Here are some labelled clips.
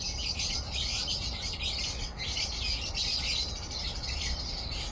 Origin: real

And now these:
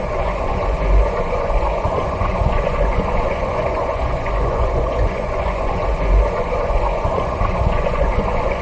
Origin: fake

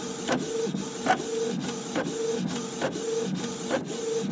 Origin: real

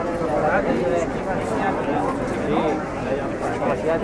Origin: real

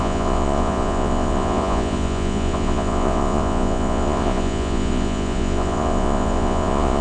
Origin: fake